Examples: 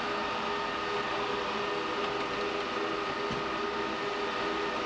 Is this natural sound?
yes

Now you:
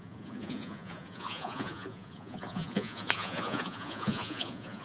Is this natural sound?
no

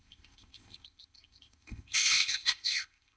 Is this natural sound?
no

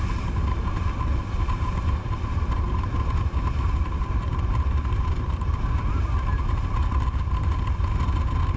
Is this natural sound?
yes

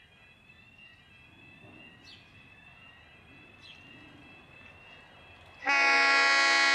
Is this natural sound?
yes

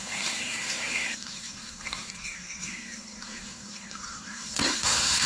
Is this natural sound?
no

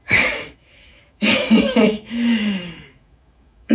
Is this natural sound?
no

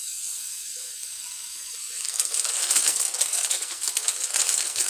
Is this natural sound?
no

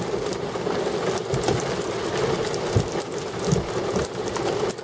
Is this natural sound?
yes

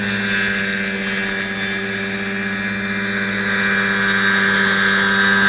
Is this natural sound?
yes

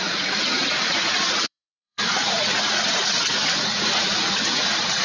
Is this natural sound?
no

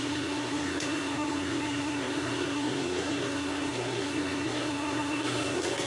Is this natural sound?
no